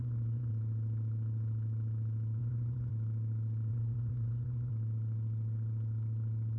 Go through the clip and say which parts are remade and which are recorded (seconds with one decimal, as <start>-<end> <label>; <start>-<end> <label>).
0.0-0.5 remade; 0.5-2.4 recorded; 2.4-2.9 remade; 2.9-3.7 recorded; 3.7-4.7 remade; 4.7-6.6 recorded